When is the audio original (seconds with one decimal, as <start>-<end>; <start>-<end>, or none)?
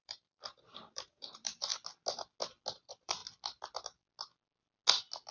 1.7-2.7; 3.2-5.3